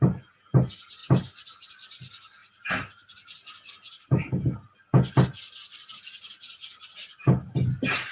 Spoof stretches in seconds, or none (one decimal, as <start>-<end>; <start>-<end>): none

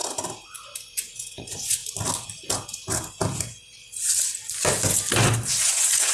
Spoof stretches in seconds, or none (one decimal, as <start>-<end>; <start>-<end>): 0.9-1.8; 5.5-6.1

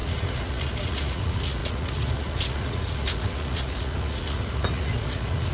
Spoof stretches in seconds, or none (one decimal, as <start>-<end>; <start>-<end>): 0.0-5.5